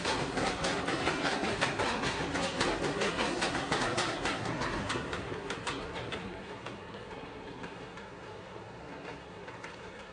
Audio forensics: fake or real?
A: fake